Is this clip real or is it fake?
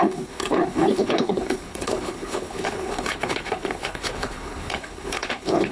fake